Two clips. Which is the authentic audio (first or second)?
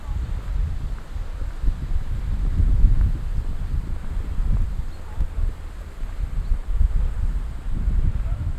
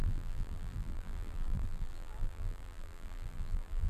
first